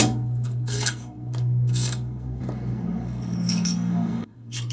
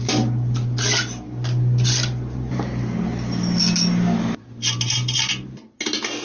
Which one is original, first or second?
second